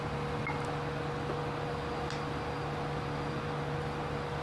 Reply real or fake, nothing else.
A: real